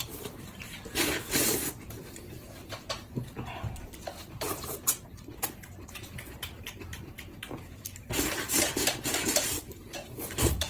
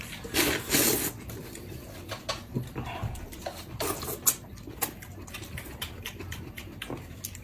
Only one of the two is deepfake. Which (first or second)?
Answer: first